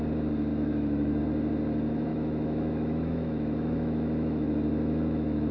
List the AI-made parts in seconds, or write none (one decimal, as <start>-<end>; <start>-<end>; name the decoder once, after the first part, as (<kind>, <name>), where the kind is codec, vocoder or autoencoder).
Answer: 0.5-1.2 (autoencoder, DAC-VAE); 2.1-5.5